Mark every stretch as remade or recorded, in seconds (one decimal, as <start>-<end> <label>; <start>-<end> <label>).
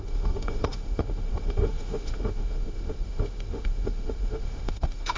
0.0-5.2 remade